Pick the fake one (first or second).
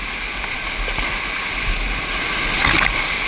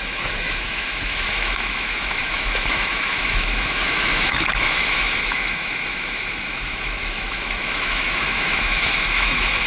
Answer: second